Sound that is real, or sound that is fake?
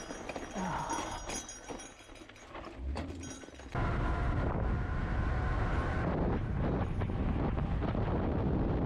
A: real